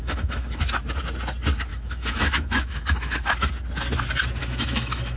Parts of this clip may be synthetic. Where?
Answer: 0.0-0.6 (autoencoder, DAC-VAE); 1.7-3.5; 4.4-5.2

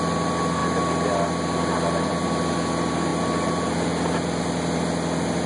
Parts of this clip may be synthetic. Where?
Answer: none

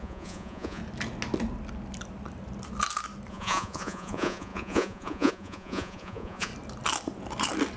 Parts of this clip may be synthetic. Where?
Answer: 0.0-0.8 (vocoder, Vocos); 3.3-6.5

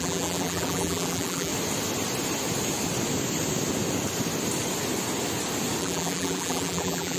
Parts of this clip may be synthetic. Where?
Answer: 0.0-1.5 (vocoder, BigVGAN v2); 5.8-7.2

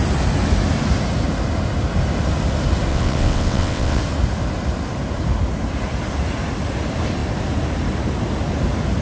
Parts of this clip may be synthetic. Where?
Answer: 2.9-4.0 (vocoder, WaveNeXt)

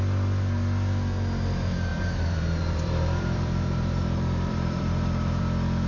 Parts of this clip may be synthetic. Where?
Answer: 1.9-5.4 (vocoder, BigVGAN v2)

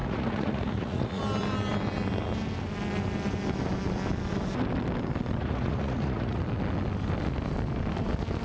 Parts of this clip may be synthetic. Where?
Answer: 0.0-1.2 (vocoder, Vocos); 5.4-6.4